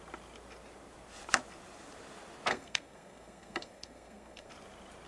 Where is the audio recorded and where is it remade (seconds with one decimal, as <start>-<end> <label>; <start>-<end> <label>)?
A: 0.0-2.5 recorded; 2.5-4.5 remade; 4.5-5.1 recorded